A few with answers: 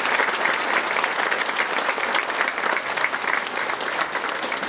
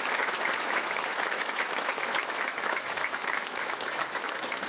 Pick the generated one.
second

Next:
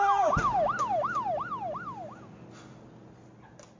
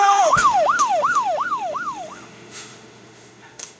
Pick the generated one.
second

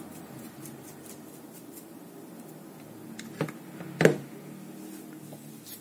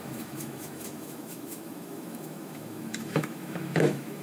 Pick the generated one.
second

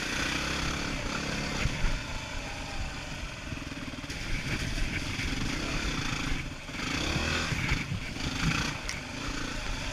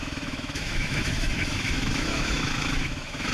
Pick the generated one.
second